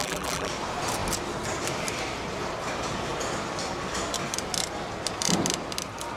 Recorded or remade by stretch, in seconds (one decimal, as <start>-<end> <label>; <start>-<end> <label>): 0.0-0.5 remade; 0.5-6.2 recorded